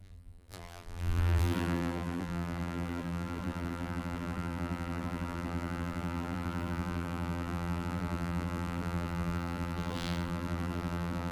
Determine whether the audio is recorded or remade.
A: remade